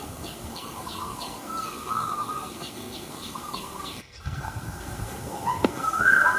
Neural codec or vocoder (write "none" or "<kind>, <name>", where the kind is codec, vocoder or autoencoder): codec, SNAC